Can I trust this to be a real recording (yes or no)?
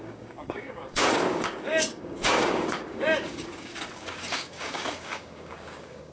no